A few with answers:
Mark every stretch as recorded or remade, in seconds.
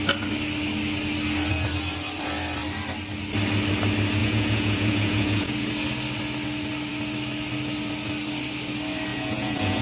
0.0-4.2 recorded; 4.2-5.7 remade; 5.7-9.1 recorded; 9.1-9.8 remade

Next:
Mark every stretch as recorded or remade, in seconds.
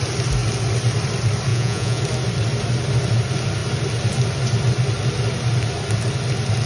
0.0-1.5 recorded; 1.5-2.0 remade; 2.0-6.7 recorded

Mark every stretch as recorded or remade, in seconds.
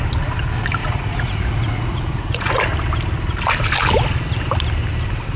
0.0-0.8 recorded; 0.8-2.5 remade; 2.5-5.4 recorded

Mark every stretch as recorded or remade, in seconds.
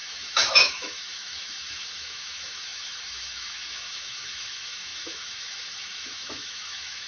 0.0-7.1 remade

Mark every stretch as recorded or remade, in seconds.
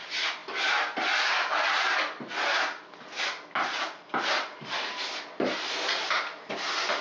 0.0-7.0 recorded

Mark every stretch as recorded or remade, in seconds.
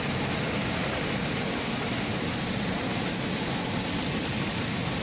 0.0-5.0 recorded